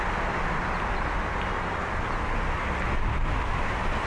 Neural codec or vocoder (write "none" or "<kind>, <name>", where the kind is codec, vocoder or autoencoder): none